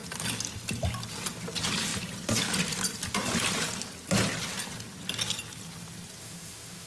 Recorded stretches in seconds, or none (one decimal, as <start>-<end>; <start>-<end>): 0.0-6.2